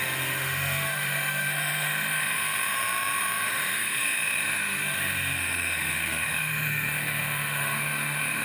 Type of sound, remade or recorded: remade